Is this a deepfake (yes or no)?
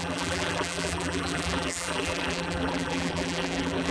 yes